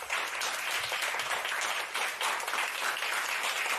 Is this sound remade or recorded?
recorded